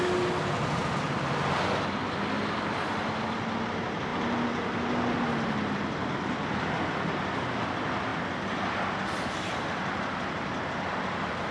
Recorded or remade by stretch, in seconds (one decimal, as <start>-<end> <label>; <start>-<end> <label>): 0.0-11.5 recorded